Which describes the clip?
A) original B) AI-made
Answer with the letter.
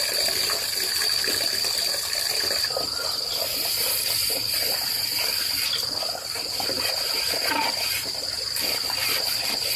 B